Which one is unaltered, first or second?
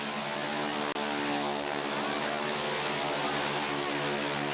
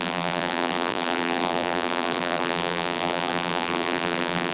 first